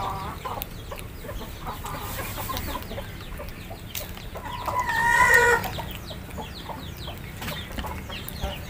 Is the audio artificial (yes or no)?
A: no